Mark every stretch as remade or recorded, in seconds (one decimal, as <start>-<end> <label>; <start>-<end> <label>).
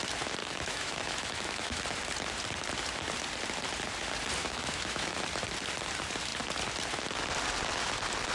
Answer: 0.0-0.4 recorded; 0.4-1.8 remade; 1.8-4.4 recorded; 4.4-5.2 remade; 5.2-8.3 recorded